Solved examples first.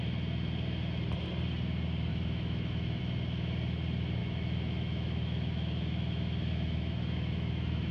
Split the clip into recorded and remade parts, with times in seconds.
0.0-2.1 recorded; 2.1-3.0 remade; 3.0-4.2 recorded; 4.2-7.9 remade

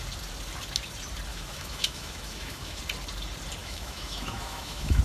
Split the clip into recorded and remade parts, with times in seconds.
0.0-1.3 recorded; 1.3-2.8 remade; 2.8-3.6 recorded; 3.6-5.0 remade